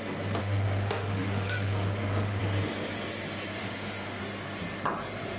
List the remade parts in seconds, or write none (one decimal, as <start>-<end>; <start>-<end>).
0.4-2.4; 3.6-4.2